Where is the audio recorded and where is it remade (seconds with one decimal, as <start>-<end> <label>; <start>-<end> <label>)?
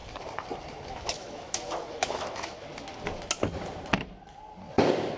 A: 0.0-0.9 recorded; 0.9-2.7 remade; 2.7-5.2 recorded